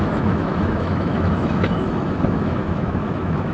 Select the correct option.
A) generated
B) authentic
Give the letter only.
A